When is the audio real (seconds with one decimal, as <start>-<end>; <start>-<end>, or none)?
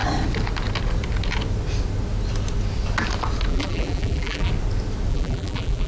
0.0-3.5; 4.5-5.1